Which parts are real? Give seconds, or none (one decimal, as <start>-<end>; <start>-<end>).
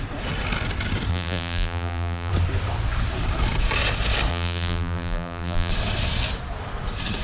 0.0-1.1; 2.3-4.3; 5.7-7.2